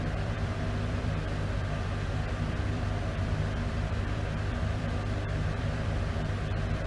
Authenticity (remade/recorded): remade